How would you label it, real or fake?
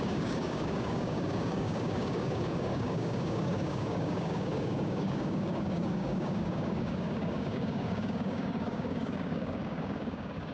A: fake